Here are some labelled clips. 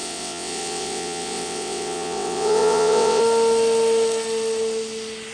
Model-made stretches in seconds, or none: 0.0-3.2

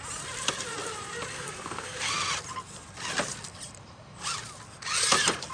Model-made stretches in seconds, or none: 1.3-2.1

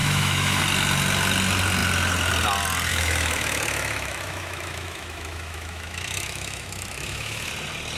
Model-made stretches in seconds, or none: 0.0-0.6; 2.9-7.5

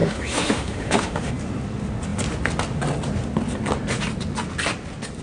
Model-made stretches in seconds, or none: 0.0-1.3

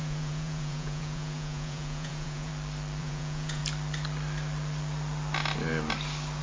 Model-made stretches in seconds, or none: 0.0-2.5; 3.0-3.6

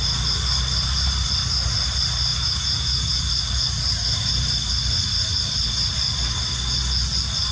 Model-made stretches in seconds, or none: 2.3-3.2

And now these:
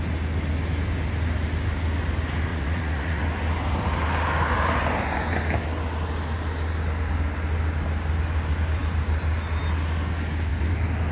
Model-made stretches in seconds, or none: 2.5-3.2